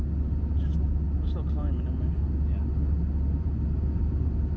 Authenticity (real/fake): real